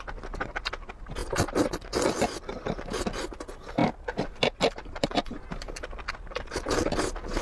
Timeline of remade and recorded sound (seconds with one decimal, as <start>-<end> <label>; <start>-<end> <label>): 0.0-1.2 recorded; 1.2-1.7 remade; 1.7-3.8 recorded; 3.8-5.7 remade; 5.7-7.4 recorded